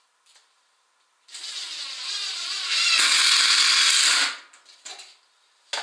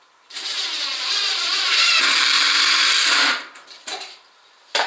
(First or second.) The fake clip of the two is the second